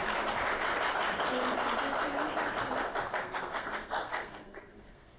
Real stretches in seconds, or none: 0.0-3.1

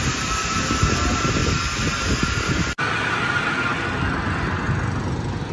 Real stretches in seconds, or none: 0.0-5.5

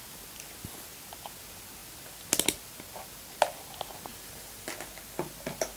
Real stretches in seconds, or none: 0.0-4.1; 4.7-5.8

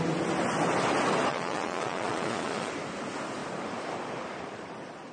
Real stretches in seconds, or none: 0.0-1.3; 2.7-5.1